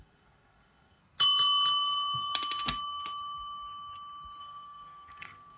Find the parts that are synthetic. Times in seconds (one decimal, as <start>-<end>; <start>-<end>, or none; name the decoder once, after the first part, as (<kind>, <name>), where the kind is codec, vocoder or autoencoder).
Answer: 0.0-1.0 (codec, SNAC); 4.4-5.6